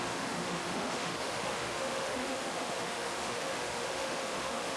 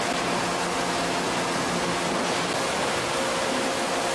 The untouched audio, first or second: second